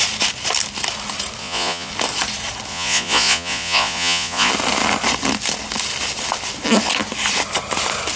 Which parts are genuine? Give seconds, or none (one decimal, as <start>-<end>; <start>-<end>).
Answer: 0.0-1.4; 1.9-2.7; 4.5-8.2